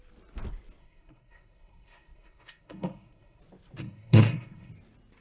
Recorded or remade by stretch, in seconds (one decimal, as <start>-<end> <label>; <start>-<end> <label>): 0.0-0.8 recorded; 0.8-3.4 remade; 3.4-3.8 recorded; 3.8-4.7 remade; 4.7-5.2 recorded